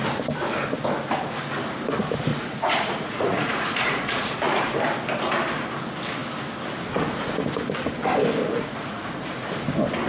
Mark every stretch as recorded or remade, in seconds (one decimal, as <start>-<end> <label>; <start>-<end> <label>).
0.0-2.3 recorded; 2.3-4.6 remade; 4.6-8.4 recorded; 8.4-9.5 remade; 9.5-10.1 recorded